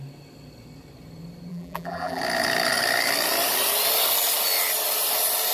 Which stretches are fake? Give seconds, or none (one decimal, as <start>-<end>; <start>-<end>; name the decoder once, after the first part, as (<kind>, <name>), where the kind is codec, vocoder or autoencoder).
1.5-2.2 (vocoder, BigVGAN v2)